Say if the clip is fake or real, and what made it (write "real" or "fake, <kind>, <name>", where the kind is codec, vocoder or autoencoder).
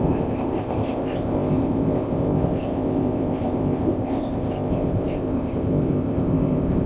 fake, codec, ZipCodec